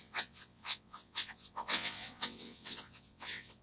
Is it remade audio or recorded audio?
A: remade